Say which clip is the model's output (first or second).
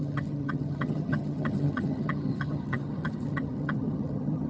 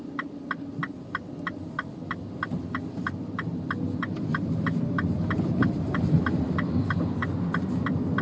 first